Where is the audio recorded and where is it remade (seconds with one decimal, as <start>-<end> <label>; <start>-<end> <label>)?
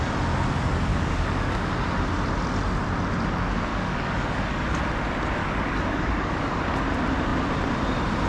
0.0-0.9 recorded; 0.9-1.7 remade; 1.7-3.7 recorded; 3.7-4.8 remade; 4.8-5.4 recorded; 5.4-6.6 remade; 6.6-8.3 recorded